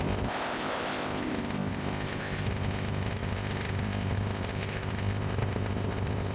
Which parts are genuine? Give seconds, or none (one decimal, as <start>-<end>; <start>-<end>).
none